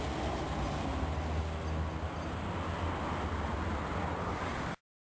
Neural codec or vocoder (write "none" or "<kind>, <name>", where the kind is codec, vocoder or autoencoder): none